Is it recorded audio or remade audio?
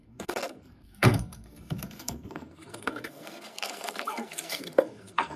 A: remade